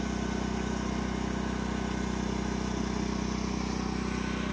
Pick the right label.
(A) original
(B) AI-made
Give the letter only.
A